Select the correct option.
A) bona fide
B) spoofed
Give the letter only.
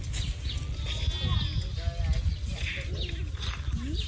A